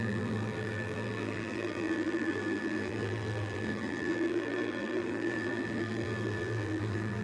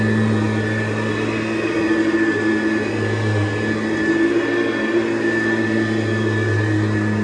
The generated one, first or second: first